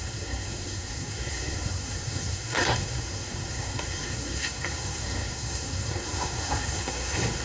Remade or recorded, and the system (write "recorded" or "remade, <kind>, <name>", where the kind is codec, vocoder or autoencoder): remade, codec, SNAC